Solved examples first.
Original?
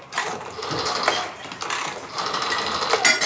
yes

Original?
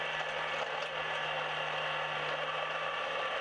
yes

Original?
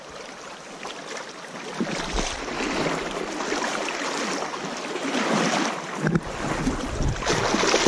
yes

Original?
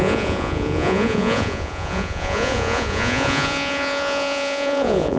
no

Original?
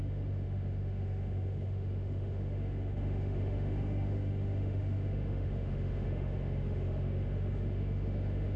no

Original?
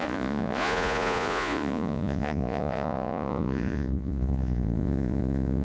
no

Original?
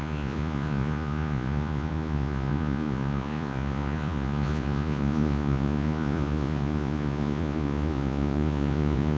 no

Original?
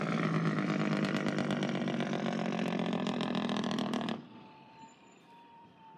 no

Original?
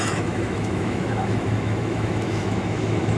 no